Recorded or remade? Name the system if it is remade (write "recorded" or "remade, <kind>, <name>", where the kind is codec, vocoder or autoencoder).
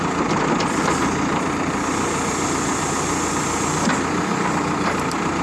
recorded